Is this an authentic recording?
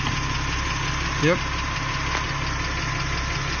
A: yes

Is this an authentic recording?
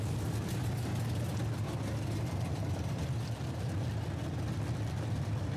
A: yes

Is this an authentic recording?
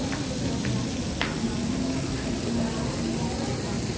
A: yes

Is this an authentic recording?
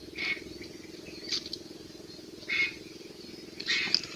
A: yes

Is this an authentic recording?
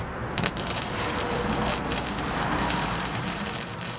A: no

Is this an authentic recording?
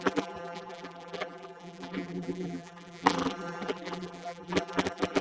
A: no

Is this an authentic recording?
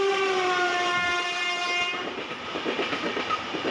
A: no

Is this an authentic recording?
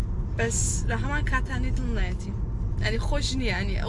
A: yes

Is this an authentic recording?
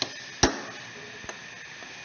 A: yes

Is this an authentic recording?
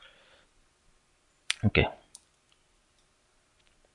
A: yes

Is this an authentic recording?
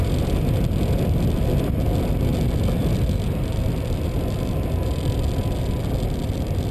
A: yes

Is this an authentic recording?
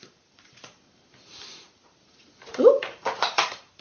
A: no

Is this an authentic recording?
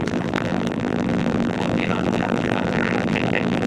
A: no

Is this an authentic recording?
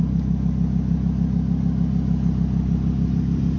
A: yes